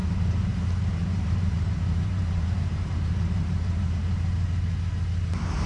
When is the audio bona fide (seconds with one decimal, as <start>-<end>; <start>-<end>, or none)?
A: 0.6-1.0; 4.0-5.7